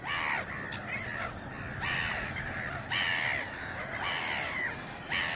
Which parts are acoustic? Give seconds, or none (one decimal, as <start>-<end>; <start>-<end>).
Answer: 0.0-5.4